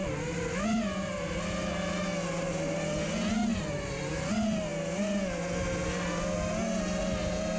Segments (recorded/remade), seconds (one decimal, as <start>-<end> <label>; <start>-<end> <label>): 0.0-0.7 recorded; 0.7-1.3 remade; 1.3-3.5 recorded; 3.5-4.1 remade; 4.1-7.6 recorded